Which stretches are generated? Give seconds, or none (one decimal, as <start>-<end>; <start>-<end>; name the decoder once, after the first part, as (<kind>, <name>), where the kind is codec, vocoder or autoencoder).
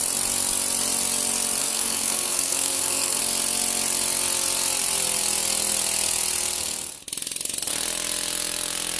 1.6-3.2 (codec, SNAC)